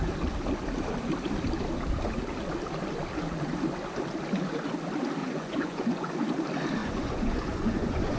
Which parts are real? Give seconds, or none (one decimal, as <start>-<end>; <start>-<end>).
0.0-5.2; 6.1-6.8